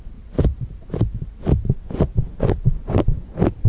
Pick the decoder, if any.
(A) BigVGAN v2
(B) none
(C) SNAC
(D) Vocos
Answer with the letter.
A